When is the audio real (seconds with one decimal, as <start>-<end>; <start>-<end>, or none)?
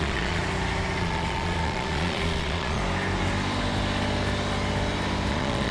0.4-1.0; 2.8-5.3